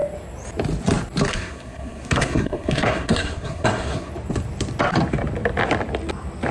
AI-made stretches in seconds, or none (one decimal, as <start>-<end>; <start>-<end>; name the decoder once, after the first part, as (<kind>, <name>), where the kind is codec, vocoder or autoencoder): 1.3-4.1 (codec, SNAC)